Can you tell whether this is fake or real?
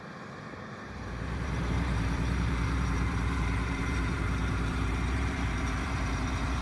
fake